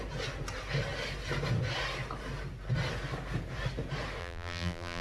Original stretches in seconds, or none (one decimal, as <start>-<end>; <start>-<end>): 0.0-4.2